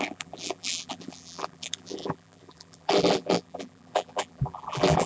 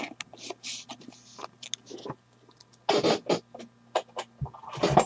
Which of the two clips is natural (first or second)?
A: second